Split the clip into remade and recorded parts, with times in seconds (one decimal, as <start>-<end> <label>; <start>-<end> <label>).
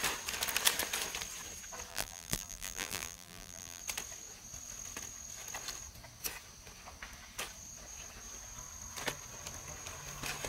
0.0-1.9 recorded; 1.9-3.8 remade; 3.8-10.5 recorded